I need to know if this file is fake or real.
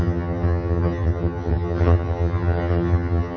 fake